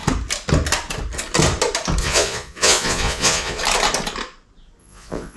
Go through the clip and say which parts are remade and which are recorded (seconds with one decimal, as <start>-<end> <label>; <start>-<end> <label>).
0.0-2.0 recorded; 2.0-3.6 remade; 3.6-4.8 recorded; 4.8-5.4 remade